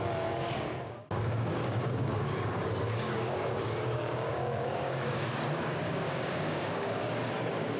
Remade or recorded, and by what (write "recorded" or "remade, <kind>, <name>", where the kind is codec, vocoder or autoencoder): remade, codec, DAC